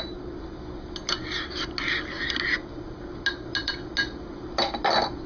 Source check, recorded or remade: recorded